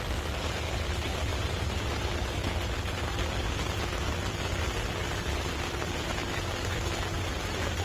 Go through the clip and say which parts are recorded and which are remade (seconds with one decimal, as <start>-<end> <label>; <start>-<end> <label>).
0.0-1.3 recorded; 1.3-2.0 remade; 2.0-7.8 recorded